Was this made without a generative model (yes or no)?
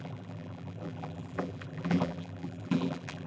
no